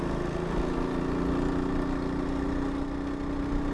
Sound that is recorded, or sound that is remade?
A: recorded